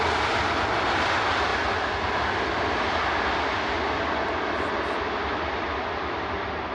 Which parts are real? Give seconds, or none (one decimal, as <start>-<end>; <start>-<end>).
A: 0.0-6.7